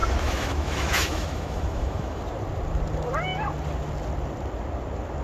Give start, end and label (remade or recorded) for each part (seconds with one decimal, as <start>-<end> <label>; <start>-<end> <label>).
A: 0.0-2.2 remade; 2.2-5.2 recorded